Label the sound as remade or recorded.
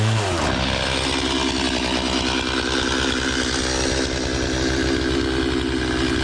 recorded